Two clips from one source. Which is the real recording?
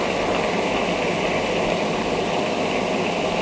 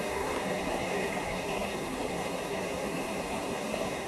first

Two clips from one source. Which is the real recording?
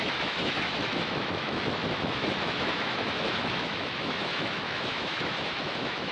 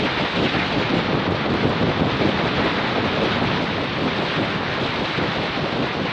second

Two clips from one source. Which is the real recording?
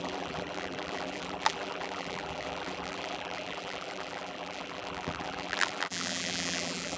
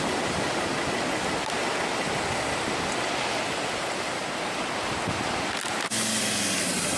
second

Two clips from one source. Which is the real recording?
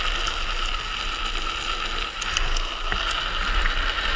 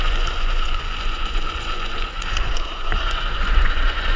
first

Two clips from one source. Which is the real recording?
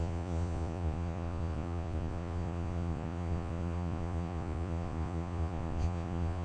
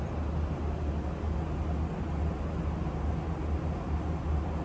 second